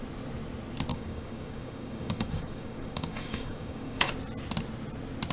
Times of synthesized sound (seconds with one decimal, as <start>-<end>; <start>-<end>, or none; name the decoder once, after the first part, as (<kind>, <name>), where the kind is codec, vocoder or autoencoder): 0.9-4.1 (codec, DAC)